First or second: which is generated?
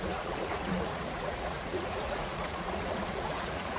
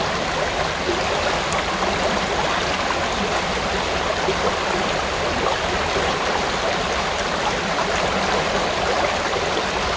first